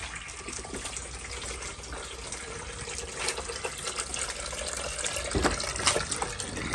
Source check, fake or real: real